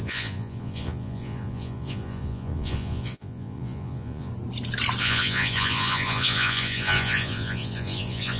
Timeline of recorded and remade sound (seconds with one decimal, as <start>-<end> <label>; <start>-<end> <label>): 0.0-4.3 remade; 4.3-5.0 recorded; 5.0-8.4 remade